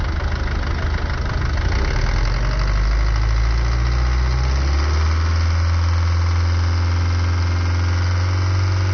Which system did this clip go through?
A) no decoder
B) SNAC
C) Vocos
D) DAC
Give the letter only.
A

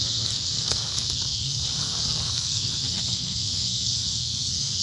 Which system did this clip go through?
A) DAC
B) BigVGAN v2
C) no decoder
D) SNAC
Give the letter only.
D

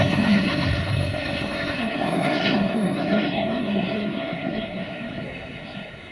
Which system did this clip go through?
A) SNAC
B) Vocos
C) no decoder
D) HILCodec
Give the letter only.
A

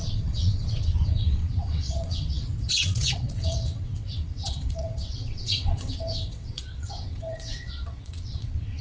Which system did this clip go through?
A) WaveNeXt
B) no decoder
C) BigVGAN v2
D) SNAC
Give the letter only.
A